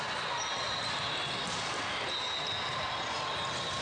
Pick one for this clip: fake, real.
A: real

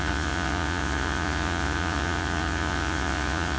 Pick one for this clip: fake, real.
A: fake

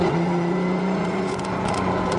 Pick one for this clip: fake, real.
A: fake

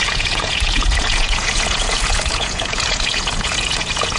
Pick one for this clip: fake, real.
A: fake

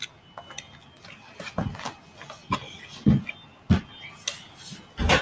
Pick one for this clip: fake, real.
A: real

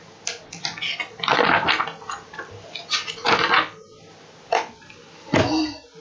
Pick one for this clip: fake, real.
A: real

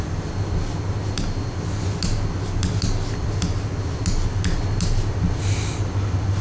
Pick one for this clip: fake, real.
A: real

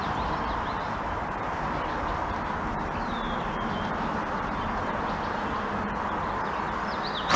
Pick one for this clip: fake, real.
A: real